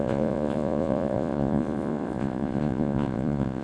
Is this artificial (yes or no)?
yes